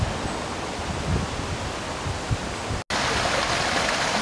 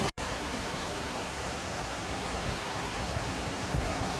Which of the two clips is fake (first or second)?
second